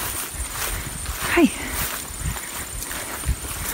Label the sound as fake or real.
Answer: real